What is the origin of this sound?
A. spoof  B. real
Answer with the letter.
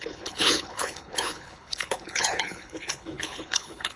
A